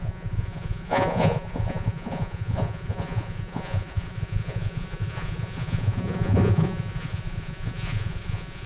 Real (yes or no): no